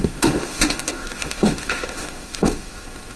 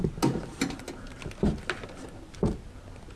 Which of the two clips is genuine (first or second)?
second